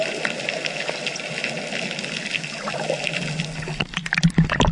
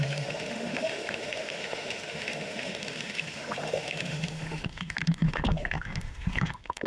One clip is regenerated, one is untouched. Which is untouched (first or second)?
first